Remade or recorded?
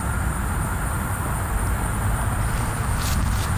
recorded